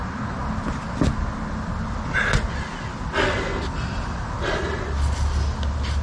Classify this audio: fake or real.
real